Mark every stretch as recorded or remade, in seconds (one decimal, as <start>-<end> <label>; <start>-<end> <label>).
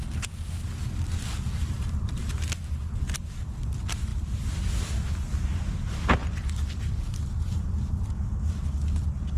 0.0-1.6 recorded; 1.6-2.4 remade; 2.4-9.4 recorded